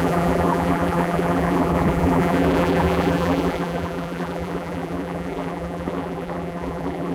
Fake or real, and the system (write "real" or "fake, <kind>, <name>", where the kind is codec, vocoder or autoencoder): fake, vocoder, BigVGAN v2